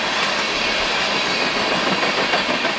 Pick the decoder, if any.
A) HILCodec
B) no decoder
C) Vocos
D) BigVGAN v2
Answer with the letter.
B